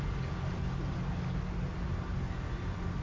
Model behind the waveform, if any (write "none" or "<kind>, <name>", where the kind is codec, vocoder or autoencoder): none